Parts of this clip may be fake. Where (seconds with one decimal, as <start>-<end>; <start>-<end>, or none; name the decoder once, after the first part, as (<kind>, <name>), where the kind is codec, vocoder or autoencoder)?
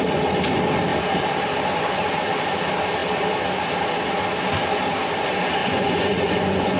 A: 5.6-6.8 (vocoder, Vocos)